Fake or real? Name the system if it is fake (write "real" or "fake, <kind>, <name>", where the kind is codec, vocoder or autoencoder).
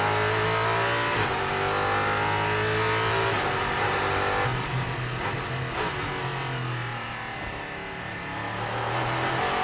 real